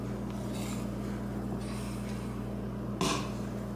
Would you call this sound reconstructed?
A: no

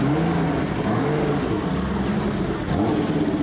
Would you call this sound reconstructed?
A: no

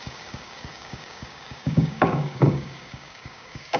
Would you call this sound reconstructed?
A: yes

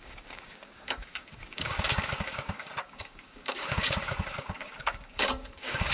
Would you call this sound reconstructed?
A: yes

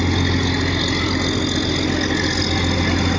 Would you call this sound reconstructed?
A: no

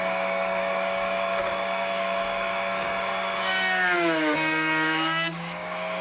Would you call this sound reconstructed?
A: yes